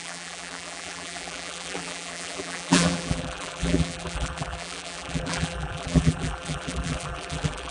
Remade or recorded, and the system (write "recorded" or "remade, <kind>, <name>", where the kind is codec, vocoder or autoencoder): remade, vocoder, BigVGAN v2